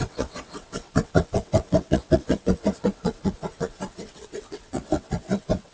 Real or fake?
fake